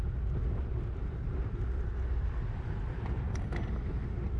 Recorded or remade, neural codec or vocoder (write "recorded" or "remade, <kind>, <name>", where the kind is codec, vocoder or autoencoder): recorded